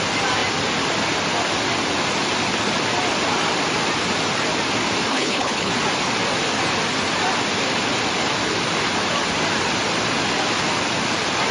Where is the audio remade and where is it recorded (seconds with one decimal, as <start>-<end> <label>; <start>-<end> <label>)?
0.0-5.1 recorded; 5.1-5.7 remade; 5.7-11.5 recorded